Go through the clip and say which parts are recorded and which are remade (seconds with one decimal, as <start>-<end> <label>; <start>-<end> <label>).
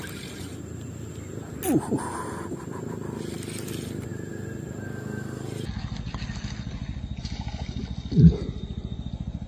0.0-9.5 recorded